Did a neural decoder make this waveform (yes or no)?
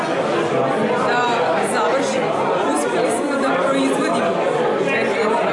no